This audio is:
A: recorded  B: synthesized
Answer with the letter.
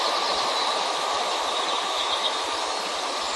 A